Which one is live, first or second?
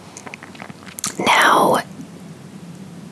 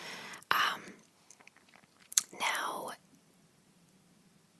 first